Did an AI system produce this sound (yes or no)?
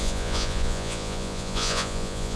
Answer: yes